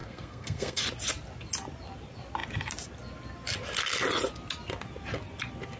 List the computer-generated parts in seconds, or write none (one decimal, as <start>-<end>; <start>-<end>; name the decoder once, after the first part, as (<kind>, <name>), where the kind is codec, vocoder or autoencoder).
0.0-0.8 (codec, SNAC)